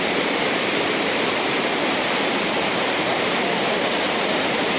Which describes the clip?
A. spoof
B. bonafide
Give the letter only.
A